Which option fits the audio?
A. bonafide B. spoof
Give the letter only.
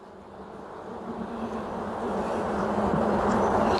A